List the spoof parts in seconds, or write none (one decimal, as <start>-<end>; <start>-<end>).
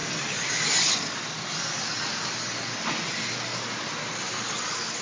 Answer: none